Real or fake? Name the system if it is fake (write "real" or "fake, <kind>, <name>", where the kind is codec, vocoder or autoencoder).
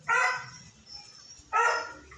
real